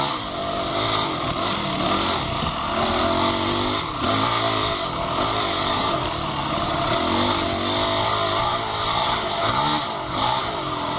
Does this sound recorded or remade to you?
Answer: recorded